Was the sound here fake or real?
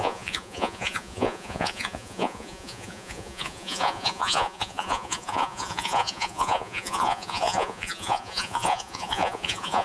fake